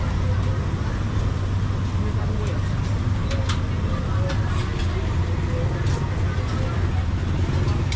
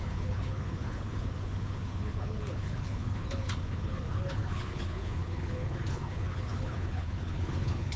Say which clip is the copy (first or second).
second